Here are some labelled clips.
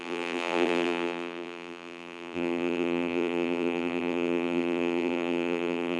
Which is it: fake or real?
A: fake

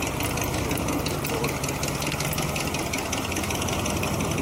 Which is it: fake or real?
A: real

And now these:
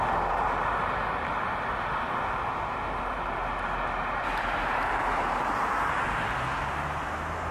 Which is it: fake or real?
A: real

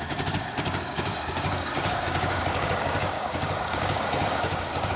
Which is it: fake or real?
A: fake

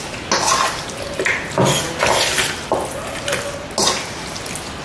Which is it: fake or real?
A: real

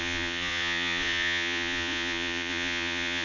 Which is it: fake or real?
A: fake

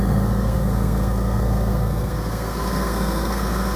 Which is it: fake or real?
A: fake